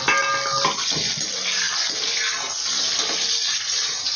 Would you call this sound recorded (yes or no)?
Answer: yes